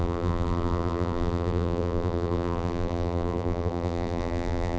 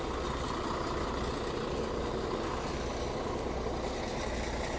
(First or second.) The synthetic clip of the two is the first